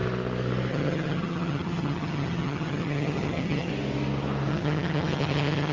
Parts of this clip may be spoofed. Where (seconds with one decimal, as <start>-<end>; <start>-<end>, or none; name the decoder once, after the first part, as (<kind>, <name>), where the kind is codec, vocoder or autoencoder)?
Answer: 0.7-3.7 (vocoder, HiFi-GAN); 4.5-5.7